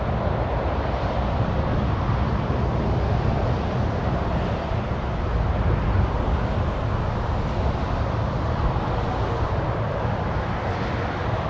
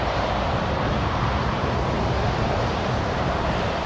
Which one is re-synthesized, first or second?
second